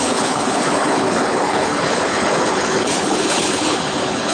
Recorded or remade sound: remade